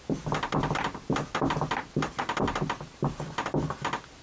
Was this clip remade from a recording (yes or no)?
no